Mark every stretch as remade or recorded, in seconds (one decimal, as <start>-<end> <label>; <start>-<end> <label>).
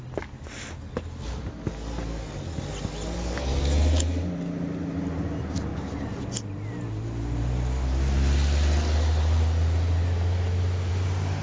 0.0-11.4 recorded